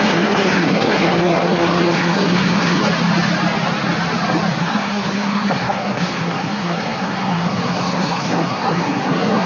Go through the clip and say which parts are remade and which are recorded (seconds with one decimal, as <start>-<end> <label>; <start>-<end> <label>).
0.0-2.8 remade; 2.8-4.6 recorded; 4.6-9.5 remade